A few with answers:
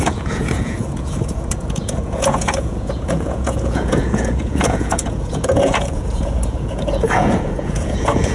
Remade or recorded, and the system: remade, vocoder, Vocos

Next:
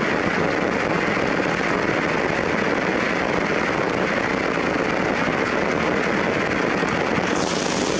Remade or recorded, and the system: recorded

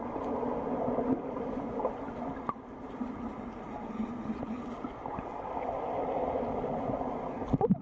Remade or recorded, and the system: recorded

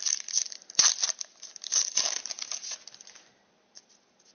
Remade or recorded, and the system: recorded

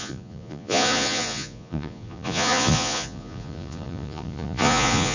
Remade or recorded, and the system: remade, vocoder, Vocos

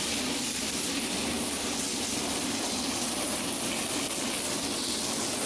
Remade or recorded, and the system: recorded